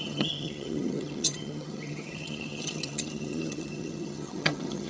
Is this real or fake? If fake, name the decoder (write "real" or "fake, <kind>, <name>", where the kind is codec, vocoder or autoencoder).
fake, vocoder, HiFi-GAN